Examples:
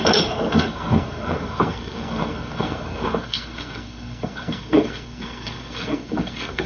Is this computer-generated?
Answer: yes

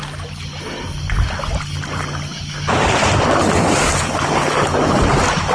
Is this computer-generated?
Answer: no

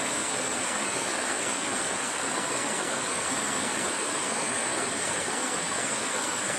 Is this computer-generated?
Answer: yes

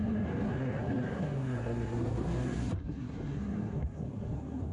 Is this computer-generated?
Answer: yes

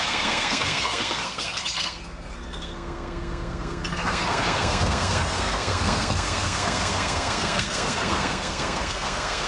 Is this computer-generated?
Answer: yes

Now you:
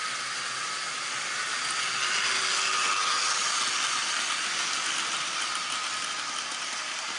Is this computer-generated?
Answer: no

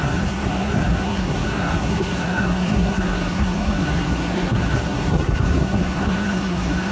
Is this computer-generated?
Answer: yes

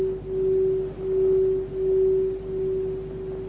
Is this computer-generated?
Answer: no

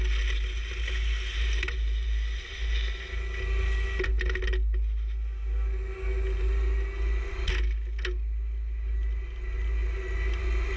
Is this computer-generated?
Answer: no